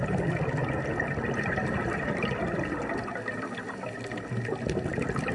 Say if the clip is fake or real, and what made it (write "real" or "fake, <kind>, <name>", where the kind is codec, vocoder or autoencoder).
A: real